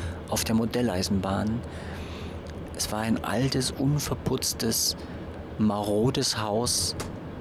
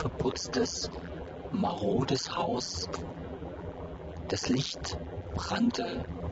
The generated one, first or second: second